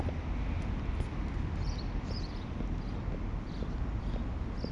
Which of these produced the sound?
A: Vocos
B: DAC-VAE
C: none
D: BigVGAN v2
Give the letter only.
C